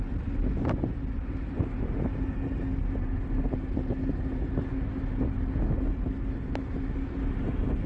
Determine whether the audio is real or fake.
real